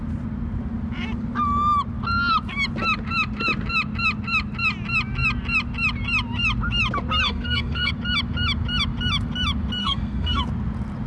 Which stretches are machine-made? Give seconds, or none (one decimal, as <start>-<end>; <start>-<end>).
7.3-7.9; 9.8-10.4